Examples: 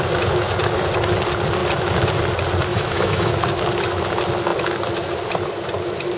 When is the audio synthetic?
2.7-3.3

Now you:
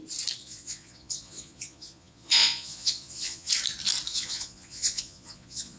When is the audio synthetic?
0.4-3.5; 4.1-5.8

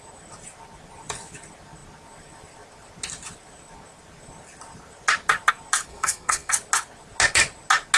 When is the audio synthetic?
5.9-6.5